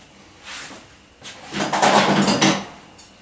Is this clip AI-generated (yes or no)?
no